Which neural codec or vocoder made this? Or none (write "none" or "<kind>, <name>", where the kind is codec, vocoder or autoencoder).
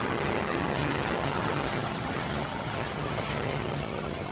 vocoder, HiFi-GAN